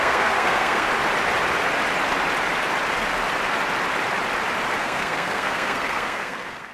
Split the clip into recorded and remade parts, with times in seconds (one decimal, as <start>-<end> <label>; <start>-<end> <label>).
0.0-0.9 remade; 0.9-4.8 recorded; 4.8-6.7 remade